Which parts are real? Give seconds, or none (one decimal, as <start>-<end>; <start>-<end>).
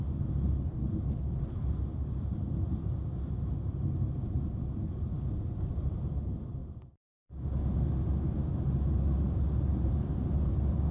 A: 0.0-9.7; 10.5-10.9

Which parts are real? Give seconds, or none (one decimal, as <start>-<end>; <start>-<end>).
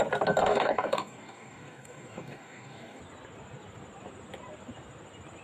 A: 0.0-0.4; 3.0-5.4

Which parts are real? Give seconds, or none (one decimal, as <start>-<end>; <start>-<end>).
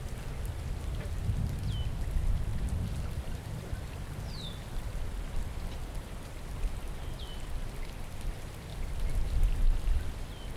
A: 0.0-2.5; 6.7-8.7; 10.2-10.6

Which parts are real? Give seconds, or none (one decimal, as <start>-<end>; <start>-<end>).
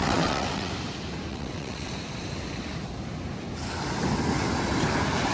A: 0.7-1.3; 1.9-5.3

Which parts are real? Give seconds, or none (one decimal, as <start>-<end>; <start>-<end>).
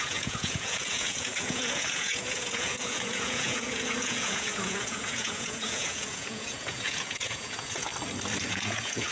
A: 7.9-8.5